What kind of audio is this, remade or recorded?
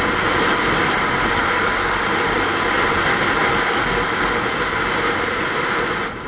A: recorded